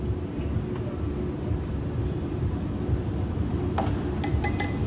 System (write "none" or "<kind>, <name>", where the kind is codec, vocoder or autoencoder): none